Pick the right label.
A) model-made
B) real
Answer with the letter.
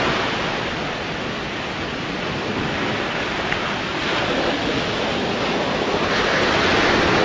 B